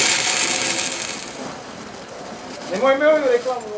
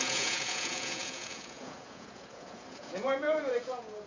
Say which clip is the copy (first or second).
second